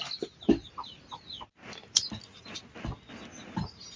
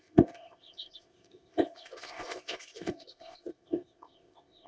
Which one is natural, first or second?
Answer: first